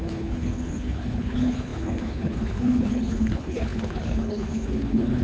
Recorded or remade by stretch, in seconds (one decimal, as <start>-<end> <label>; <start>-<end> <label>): 0.0-5.2 remade

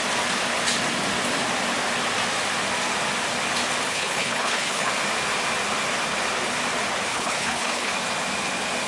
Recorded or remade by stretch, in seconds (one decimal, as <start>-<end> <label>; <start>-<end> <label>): 0.0-3.9 recorded; 3.9-4.9 remade; 4.9-7.1 recorded; 7.1-7.9 remade; 7.9-8.9 recorded

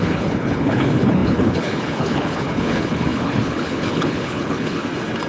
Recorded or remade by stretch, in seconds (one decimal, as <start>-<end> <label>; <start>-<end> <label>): 0.0-4.8 remade; 4.8-5.3 recorded